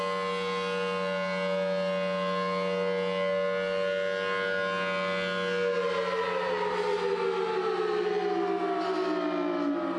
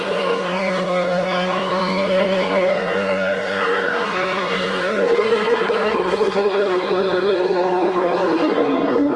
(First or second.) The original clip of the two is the first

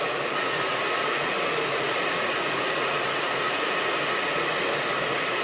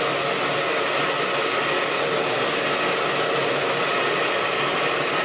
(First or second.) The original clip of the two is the second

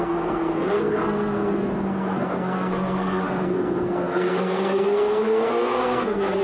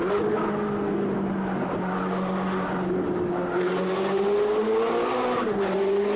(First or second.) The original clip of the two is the second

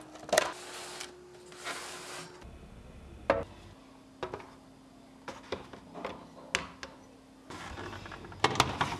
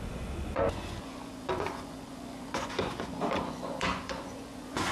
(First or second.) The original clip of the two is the first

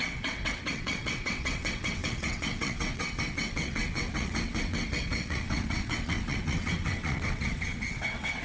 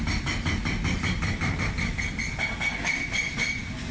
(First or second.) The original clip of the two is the second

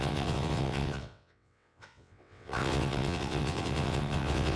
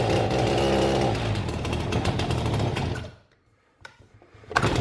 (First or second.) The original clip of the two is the second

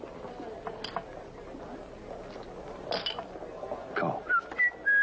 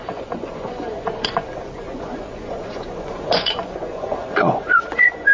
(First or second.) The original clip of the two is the first